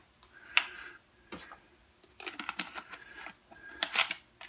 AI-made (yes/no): yes